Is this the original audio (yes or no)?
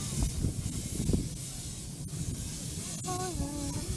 yes